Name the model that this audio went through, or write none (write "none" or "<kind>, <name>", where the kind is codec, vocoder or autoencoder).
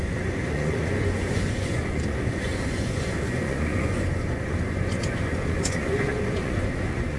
vocoder, Vocos